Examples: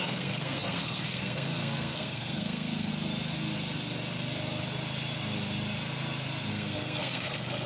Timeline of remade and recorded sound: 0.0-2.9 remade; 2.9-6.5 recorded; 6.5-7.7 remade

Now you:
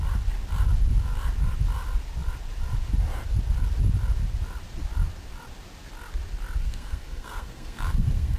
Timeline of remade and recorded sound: 0.0-6.6 recorded; 6.6-8.4 remade

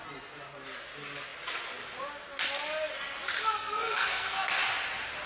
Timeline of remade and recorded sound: 0.0-3.4 recorded; 3.4-4.6 remade; 4.6-5.3 recorded

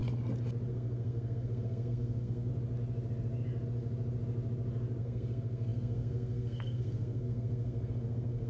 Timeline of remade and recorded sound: 0.0-0.7 recorded; 0.7-2.5 remade; 2.5-5.0 recorded; 5.0-8.5 remade

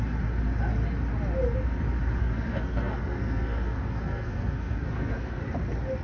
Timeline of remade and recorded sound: 0.0-2.2 recorded; 2.2-5.4 remade; 5.4-6.0 recorded

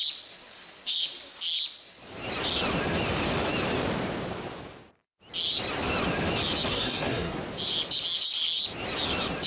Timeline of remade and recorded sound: 0.0-6.7 recorded; 6.7-7.4 remade; 7.4-9.5 recorded